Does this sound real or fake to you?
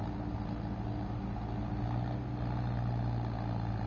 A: real